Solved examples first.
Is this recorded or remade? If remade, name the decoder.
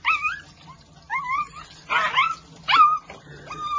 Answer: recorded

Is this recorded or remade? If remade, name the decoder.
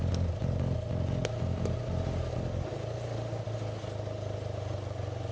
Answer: recorded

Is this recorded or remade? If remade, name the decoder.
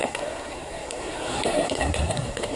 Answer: remade, codec, SNAC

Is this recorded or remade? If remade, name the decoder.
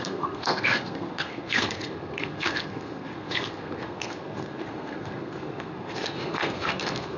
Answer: remade, codec, SNAC